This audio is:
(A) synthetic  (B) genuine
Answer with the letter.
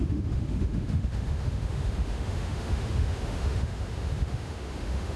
A